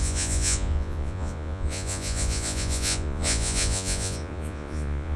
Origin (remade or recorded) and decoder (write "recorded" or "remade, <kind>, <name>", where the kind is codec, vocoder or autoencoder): remade, vocoder, Vocos